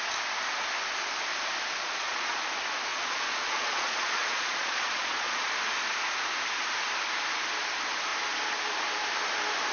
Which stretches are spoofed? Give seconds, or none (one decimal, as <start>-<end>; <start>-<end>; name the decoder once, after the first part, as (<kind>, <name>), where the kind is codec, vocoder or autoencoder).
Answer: 1.8-2.4 (vocoder, Vocos); 2.9-5.5